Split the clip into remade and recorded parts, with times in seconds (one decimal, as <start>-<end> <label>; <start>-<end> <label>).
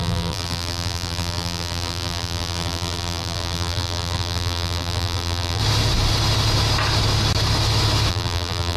0.0-5.6 remade; 5.6-8.1 recorded; 8.1-8.8 remade